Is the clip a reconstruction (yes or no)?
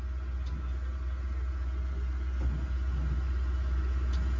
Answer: no